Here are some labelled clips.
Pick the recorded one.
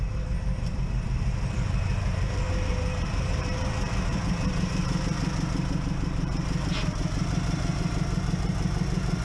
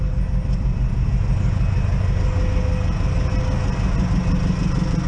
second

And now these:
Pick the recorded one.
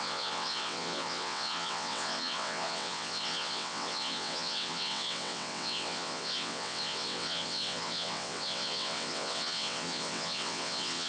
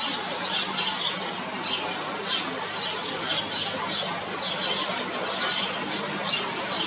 second